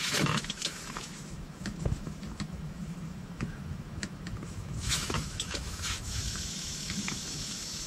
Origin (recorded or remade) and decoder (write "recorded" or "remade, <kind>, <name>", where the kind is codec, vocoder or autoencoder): remade, autoencoder, DAC-VAE